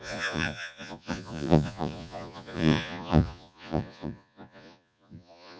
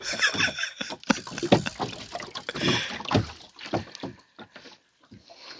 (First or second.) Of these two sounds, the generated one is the first